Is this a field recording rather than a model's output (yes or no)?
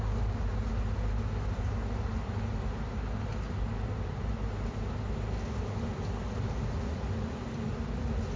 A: yes